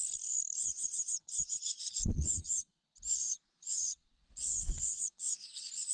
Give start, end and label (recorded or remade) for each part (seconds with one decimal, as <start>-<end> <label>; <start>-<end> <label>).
0.0-0.6 recorded; 0.6-2.8 remade; 2.8-3.2 recorded; 3.2-5.9 remade